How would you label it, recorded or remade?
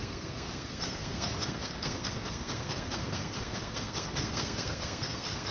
remade